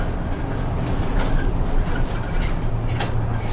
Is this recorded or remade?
recorded